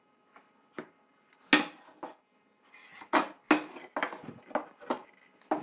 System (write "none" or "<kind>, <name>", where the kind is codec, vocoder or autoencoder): none